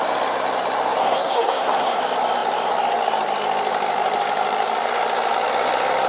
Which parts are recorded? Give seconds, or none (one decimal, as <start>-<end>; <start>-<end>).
0.0-1.0; 2.0-6.1